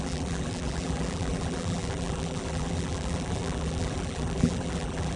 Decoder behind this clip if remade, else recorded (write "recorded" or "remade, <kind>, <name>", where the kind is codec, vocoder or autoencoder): remade, vocoder, BigVGAN v2